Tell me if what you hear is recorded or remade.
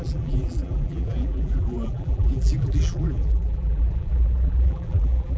remade